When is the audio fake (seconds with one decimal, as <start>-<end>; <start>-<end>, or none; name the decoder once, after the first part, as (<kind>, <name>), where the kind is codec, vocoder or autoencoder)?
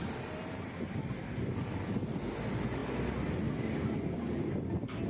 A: none